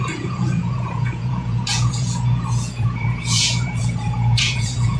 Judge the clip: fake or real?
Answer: fake